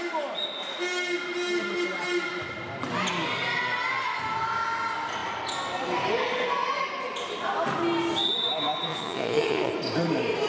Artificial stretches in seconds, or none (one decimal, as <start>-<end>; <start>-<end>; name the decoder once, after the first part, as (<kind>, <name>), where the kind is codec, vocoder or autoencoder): 8.9-9.7 (vocoder, Vocos)